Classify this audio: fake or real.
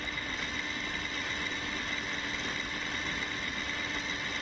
real